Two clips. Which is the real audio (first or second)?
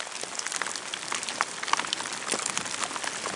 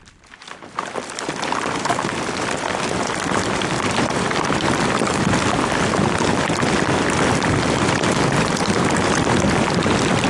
first